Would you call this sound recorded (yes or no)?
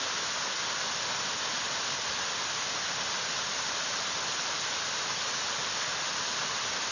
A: yes